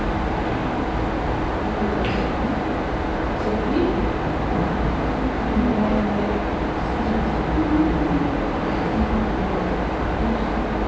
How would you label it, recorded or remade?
recorded